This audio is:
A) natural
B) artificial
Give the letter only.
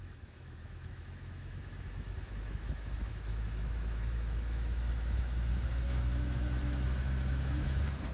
B